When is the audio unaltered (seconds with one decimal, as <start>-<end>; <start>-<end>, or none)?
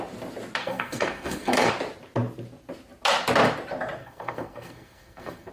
0.0-0.6; 1.7-4.0